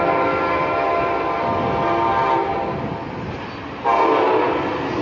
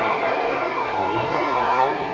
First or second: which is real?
first